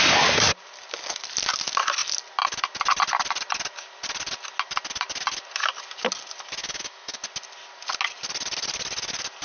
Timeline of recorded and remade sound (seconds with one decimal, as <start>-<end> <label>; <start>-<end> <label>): 0.0-6.6 recorded; 6.6-7.2 remade; 7.2-9.4 recorded

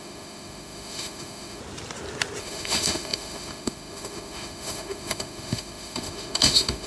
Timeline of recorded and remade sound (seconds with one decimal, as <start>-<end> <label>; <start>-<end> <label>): 0.0-1.6 remade; 1.6-2.4 recorded; 2.4-6.9 remade

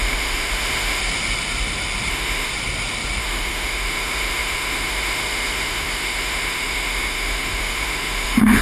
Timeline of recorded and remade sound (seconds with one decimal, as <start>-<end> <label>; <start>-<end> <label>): 0.0-1.0 remade; 1.0-2.1 recorded; 2.1-2.5 remade; 2.5-3.2 recorded; 3.2-8.6 remade

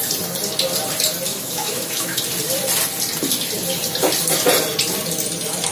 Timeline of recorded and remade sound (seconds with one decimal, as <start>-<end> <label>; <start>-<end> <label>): 0.0-1.3 recorded; 1.3-2.2 remade; 2.2-5.7 recorded

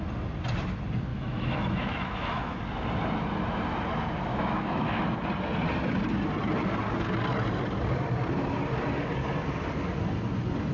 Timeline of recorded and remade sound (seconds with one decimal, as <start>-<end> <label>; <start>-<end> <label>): 0.0-1.1 recorded; 1.1-2.6 remade; 2.6-4.3 recorded; 4.3-5.0 remade; 5.0-10.7 recorded

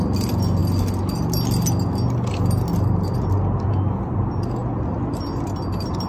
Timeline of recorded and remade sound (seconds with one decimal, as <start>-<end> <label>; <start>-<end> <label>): 0.0-6.1 recorded